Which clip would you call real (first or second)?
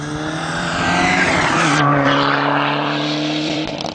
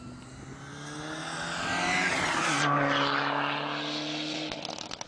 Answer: second